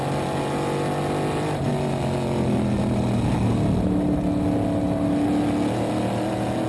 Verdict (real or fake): real